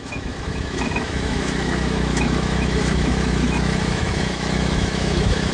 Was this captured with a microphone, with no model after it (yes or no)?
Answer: no